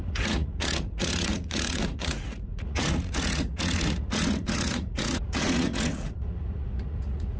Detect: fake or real fake